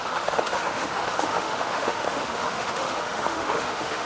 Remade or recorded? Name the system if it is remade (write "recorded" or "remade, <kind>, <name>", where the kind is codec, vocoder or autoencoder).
remade, autoencoder, DAC-VAE